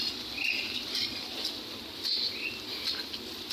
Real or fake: real